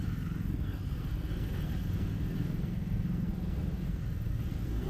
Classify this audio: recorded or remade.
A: remade